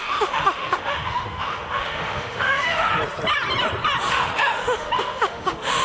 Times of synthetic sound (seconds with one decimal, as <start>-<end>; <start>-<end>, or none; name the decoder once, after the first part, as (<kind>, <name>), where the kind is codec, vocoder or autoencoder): 0.0-2.9 (autoencoder, DAC-VAE); 4.1-5.8